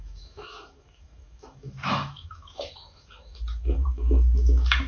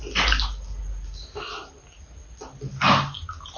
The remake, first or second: first